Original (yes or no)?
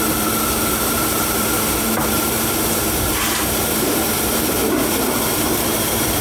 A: no